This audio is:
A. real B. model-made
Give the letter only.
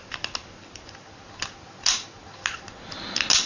A